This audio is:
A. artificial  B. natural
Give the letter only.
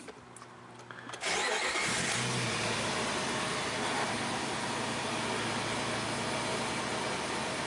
B